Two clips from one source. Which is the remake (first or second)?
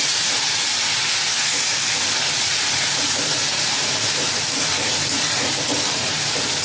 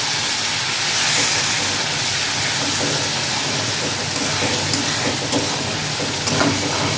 first